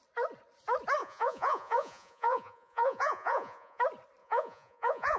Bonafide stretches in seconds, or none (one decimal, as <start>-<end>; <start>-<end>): 0.0-1.0; 3.8-4.2